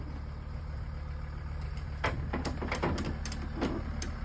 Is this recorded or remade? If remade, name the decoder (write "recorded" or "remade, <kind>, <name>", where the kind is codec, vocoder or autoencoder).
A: recorded